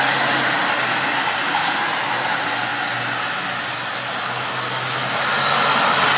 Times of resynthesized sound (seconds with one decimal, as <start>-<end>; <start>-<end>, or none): none